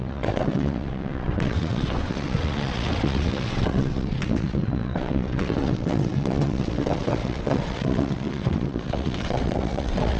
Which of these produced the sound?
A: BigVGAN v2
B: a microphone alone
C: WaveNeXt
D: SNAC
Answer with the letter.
C